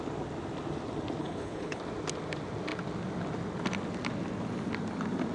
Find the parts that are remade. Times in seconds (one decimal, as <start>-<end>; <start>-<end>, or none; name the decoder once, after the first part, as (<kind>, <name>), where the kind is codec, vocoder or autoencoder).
1.2-1.8 (codec, HILCodec)